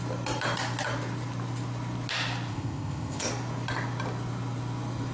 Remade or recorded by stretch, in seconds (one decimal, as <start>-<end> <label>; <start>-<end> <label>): 0.0-2.5 recorded; 2.5-3.3 remade; 3.3-5.1 recorded